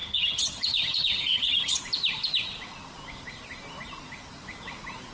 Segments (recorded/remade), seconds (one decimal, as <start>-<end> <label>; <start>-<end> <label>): 0.0-1.8 remade; 1.8-5.1 recorded